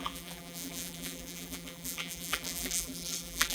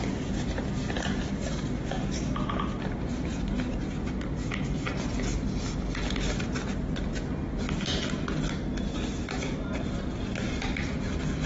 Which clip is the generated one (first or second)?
first